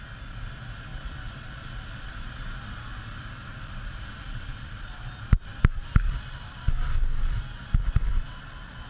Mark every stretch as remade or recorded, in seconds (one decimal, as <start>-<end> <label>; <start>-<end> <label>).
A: 0.0-8.9 recorded